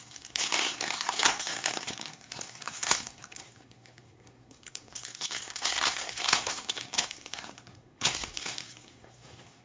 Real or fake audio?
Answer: fake